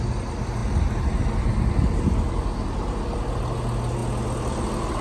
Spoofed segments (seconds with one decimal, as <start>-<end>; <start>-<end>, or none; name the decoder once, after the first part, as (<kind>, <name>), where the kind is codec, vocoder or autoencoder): none